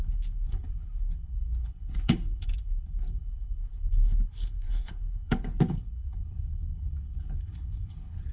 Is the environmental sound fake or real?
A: fake